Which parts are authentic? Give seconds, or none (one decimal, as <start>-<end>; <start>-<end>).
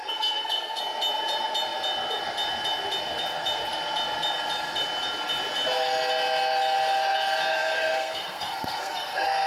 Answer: 0.8-7.5